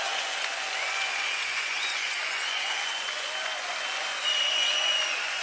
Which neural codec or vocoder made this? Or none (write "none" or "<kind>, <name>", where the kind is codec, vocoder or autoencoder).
vocoder, Vocos